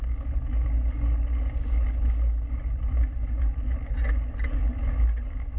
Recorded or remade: recorded